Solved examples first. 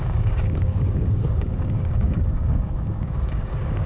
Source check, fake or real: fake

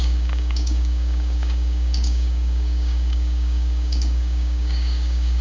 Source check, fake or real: fake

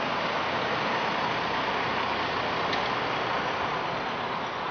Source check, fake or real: real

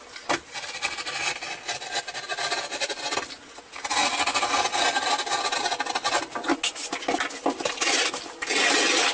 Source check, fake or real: real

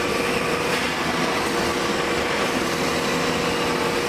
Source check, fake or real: real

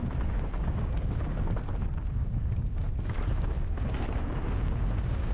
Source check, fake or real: fake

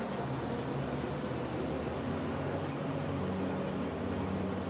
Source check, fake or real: real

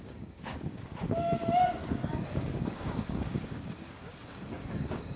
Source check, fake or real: fake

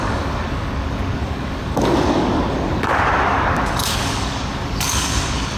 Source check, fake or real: fake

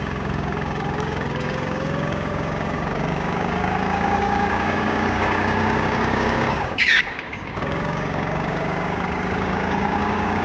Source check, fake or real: fake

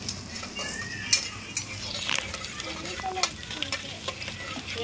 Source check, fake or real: real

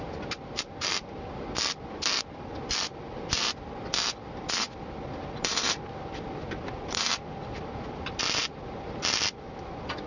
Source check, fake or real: real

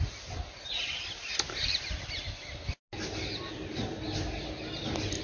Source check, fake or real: real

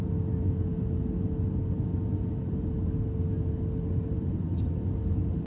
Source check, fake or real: real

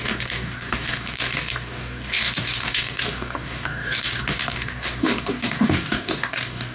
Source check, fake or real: fake